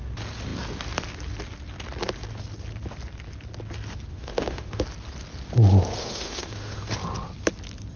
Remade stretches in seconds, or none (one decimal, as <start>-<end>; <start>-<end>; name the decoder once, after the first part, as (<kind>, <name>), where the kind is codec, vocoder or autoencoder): 4.1-4.8 (autoencoder, DAC-VAE); 6.0-6.9